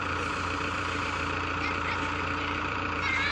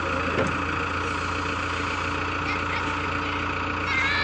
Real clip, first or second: second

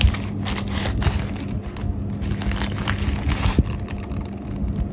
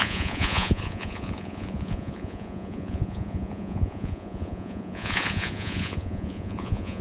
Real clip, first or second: first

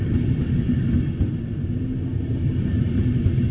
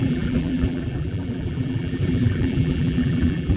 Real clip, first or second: first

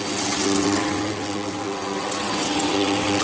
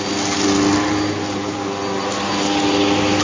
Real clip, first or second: second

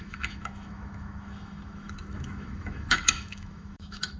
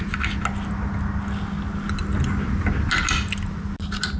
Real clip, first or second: second